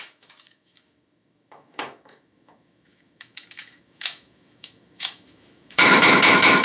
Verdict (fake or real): fake